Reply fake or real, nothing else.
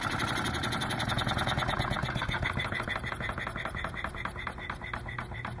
fake